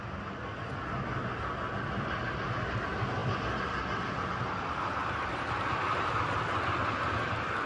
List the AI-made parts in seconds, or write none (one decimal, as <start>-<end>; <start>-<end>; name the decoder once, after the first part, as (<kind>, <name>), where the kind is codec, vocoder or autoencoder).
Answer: 5.0-6.1 (vocoder, BigVGAN v2)

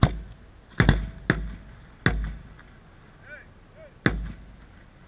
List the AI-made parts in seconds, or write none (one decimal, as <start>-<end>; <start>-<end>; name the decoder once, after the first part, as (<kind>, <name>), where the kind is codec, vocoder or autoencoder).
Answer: none

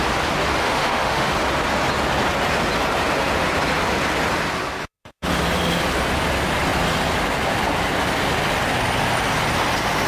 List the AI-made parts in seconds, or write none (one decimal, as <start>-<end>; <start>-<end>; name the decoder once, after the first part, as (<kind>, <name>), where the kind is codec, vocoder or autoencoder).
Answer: 0.6-1.3 (autoencoder, DAC-VAE); 4.8-5.3

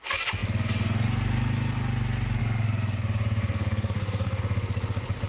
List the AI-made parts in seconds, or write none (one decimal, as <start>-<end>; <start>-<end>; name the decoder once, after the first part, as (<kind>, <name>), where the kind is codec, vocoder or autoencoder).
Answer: 3.4-4.4 (codec, SNAC)

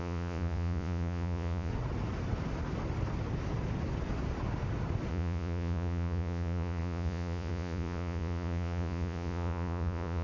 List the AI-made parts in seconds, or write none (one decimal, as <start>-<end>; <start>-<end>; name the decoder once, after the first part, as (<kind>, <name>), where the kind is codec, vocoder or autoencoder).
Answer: 0.0-1.7 (vocoder, Vocos); 5.1-10.2

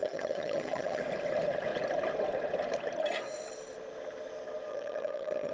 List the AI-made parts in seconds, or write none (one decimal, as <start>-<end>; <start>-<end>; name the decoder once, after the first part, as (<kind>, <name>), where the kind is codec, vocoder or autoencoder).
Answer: 0.0-1.0 (vocoder, HiFi-GAN); 4.7-5.5

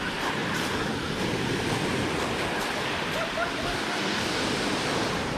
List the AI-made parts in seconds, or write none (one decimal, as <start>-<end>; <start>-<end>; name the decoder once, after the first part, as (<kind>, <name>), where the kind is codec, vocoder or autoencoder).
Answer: 3.6-4.3 (codec, DAC)

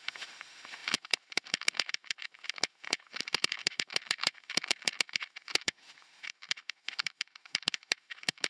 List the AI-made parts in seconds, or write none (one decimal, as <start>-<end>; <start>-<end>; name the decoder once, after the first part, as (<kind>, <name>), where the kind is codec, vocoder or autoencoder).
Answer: 0.0-8.5 (autoencoder, DAC-VAE)